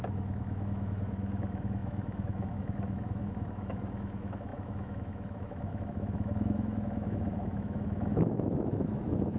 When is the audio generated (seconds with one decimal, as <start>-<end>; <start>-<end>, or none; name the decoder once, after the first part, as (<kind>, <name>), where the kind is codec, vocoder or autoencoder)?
0.0-9.4 (autoencoder, DAC-VAE)